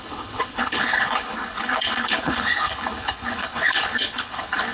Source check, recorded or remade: remade